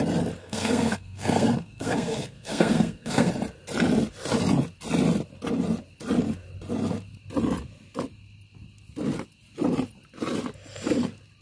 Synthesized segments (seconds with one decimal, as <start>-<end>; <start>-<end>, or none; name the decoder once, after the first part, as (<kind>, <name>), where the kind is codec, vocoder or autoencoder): 0.4-3.3 (codec, SNAC)